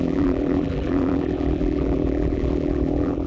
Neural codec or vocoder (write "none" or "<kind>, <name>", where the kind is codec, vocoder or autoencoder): vocoder, BigVGAN v2